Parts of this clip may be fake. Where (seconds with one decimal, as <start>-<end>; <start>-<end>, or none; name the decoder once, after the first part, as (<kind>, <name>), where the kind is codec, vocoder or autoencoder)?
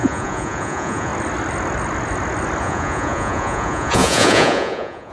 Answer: 0.0-1.1 (vocoder, Vocos); 2.6-5.1